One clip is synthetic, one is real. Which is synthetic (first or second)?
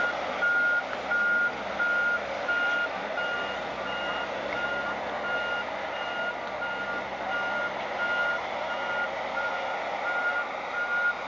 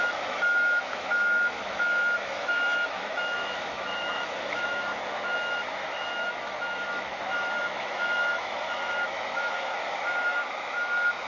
second